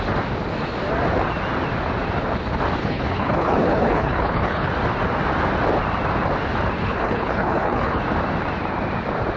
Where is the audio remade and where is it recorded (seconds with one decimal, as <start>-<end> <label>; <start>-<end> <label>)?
0.0-2.8 recorded; 2.8-4.7 remade; 4.7-6.8 recorded; 6.8-8.0 remade; 8.0-9.4 recorded